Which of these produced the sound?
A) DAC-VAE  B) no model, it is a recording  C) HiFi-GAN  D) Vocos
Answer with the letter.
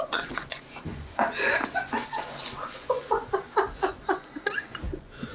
D